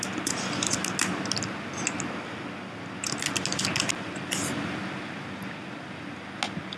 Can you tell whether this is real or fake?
real